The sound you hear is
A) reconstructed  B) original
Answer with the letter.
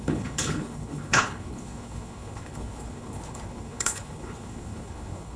A